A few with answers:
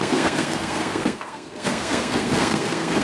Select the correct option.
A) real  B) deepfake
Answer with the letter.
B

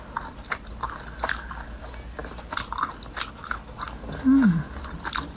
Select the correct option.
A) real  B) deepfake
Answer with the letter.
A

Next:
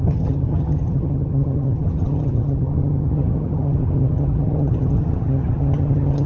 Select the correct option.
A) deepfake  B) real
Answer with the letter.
A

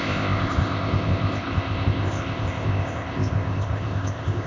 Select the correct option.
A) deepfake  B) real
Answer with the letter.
A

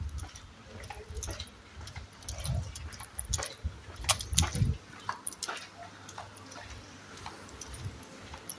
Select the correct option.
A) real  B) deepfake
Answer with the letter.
A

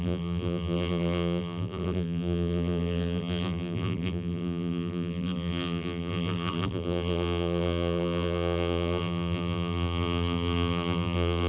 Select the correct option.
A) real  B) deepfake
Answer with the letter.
B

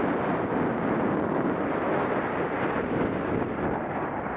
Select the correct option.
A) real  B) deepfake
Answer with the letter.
A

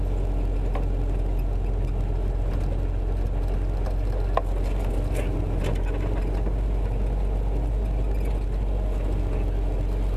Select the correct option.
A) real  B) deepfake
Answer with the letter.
A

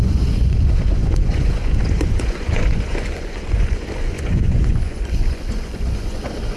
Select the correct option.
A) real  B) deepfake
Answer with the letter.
B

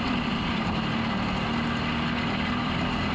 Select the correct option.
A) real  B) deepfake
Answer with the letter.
A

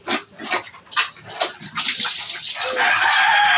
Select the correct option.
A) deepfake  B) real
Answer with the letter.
B